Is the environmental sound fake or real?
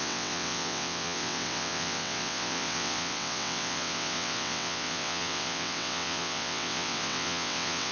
fake